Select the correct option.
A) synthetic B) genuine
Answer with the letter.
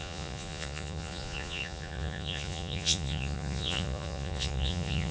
A